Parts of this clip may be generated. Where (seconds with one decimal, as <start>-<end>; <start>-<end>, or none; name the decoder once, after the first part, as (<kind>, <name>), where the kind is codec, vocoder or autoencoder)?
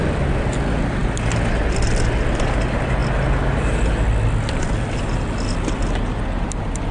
none